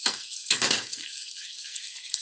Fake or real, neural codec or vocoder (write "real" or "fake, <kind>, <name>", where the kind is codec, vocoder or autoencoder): fake, codec, SNAC